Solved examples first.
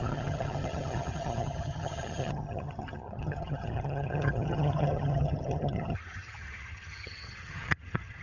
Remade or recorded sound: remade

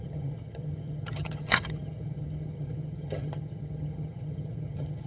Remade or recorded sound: remade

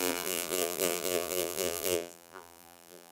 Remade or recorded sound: remade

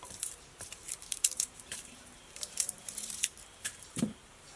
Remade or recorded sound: remade